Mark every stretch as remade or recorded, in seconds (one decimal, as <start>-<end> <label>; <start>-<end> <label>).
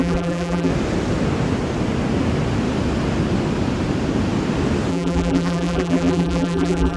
0.0-0.7 remade; 0.7-4.9 recorded; 4.9-7.0 remade